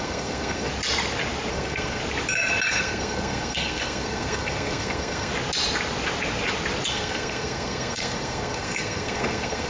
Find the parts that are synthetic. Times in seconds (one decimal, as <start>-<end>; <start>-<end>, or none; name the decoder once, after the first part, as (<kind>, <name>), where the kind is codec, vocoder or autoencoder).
0.0-0.7 (codec, SNAC); 1.5-2.0; 2.7-5.3; 6.9-9.7